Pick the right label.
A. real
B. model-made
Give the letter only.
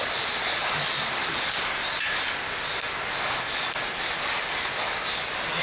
A